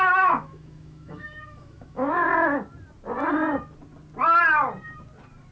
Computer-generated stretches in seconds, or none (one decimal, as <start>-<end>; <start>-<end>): 0.0-2.0